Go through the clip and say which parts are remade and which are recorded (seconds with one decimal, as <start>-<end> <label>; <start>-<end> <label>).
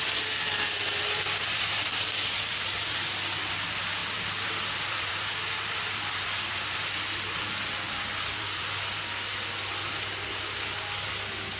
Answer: 0.0-0.9 recorded; 0.9-2.7 remade; 2.7-4.0 recorded; 4.0-8.6 remade; 8.6-11.6 recorded